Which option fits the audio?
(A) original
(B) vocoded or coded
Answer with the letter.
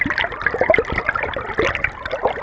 A